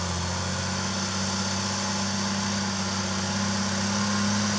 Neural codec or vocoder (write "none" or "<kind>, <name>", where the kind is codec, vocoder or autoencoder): none